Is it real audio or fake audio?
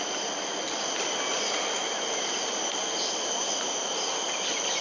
real